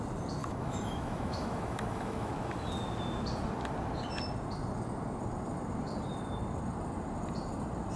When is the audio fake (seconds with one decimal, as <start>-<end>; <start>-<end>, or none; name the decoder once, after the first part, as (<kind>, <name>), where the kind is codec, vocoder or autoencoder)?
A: 0.4-2.3 (autoencoder, DAC-VAE)